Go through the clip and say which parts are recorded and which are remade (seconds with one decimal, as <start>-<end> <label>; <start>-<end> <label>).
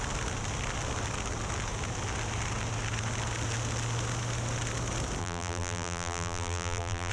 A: 0.0-5.2 recorded; 5.2-7.1 remade